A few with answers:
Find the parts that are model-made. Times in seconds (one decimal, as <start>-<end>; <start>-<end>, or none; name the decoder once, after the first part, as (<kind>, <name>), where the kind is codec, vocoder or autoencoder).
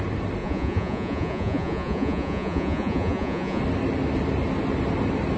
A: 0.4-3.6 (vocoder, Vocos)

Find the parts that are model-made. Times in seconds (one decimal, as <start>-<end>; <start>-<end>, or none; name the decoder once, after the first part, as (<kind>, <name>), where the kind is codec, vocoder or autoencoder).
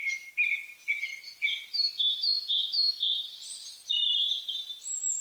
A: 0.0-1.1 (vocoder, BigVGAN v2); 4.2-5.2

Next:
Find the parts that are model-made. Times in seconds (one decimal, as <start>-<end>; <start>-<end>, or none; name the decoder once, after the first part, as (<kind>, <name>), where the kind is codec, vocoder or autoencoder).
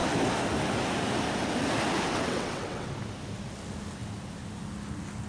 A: 2.1-2.9 (vocoder, WaveNeXt)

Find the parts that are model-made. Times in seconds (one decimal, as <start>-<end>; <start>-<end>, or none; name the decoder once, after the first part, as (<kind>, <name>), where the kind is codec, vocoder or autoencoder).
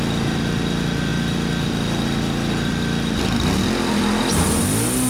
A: none